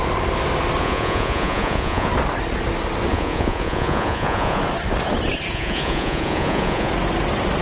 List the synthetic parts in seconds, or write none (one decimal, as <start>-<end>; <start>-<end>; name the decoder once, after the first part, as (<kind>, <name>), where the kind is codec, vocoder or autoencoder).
0.8-2.1 (vocoder, Vocos); 3.1-4.6; 5.5-6.9